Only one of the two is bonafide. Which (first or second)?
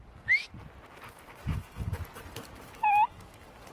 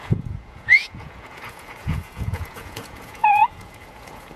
first